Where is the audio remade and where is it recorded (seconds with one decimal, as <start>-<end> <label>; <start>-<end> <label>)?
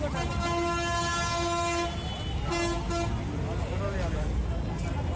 0.0-5.2 recorded